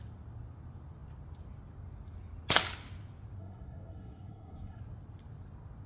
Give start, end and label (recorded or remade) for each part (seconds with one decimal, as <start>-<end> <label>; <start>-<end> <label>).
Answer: 0.0-3.4 recorded; 3.4-4.8 remade; 4.8-5.9 recorded